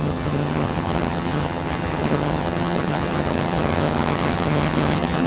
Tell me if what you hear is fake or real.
fake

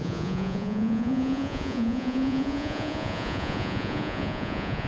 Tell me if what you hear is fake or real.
fake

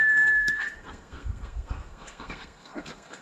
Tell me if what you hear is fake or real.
fake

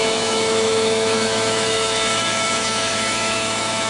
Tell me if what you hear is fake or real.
fake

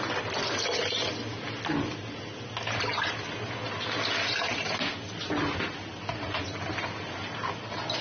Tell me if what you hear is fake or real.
real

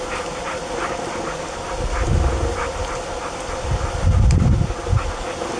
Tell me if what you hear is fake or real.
real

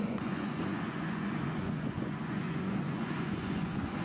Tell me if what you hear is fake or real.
fake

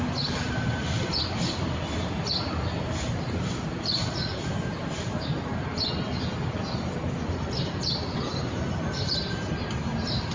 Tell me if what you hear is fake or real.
real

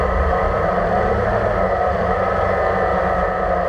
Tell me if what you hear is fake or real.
real